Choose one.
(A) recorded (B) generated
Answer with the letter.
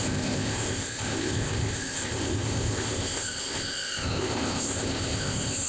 B